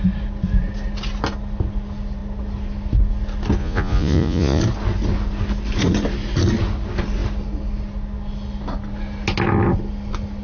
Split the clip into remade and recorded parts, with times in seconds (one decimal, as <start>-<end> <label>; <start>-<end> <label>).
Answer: 0.0-3.6 recorded; 3.6-4.6 remade; 4.6-10.4 recorded